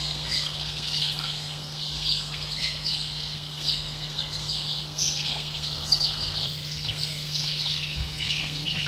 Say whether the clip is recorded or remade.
remade